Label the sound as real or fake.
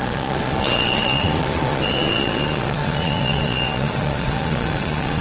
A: fake